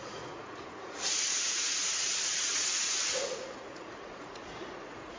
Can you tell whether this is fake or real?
fake